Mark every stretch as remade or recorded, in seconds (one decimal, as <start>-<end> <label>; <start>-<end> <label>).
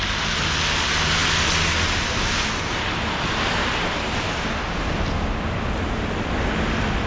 0.0-7.1 recorded